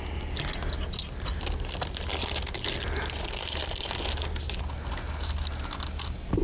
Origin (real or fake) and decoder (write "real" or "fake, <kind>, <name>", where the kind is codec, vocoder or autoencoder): real